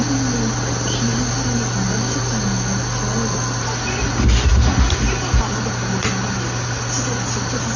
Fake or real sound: real